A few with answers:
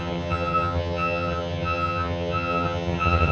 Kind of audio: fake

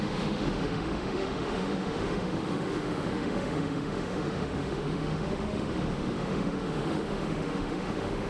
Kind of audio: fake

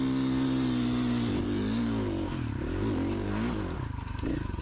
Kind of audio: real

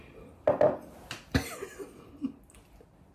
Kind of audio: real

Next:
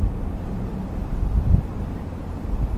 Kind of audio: real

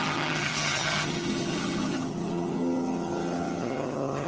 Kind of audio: fake